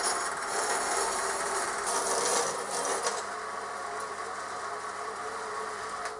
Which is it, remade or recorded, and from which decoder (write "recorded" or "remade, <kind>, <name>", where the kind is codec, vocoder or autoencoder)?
recorded